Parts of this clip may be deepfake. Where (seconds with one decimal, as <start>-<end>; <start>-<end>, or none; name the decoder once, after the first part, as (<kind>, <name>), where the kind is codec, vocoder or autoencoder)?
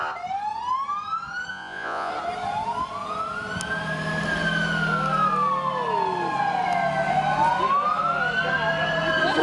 1.5-2.1 (vocoder, Vocos)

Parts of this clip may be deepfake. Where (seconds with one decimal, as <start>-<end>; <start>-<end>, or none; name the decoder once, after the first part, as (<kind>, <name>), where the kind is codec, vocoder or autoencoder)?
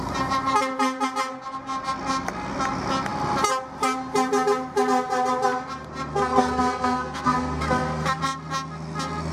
6.1-8.2 (codec, SNAC)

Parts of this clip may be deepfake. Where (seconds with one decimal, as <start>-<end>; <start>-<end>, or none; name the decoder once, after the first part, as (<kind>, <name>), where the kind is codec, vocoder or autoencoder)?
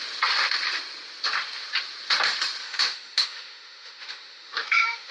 2.6-5.1 (autoencoder, DAC-VAE)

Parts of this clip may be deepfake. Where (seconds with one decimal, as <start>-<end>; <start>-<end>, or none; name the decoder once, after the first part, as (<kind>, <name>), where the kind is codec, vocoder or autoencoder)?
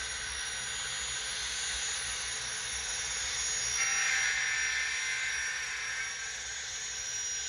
none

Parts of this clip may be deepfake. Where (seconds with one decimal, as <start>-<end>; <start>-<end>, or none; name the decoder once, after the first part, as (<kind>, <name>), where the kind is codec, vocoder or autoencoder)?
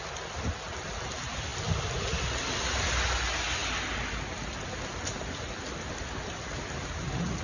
none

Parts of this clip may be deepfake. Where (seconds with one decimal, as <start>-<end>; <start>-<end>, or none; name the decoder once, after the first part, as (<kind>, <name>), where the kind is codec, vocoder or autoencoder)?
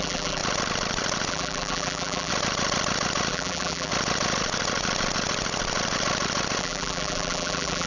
0.0-0.4 (vocoder, BigVGAN v2); 1.3-2.3; 3.3-3.9; 6.6-7.9